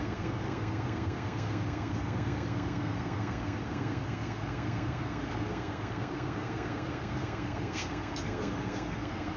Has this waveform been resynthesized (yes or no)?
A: yes